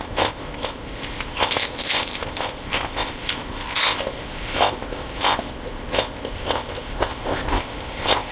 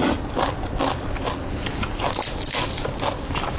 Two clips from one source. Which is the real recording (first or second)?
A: second